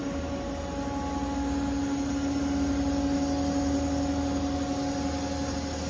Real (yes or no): yes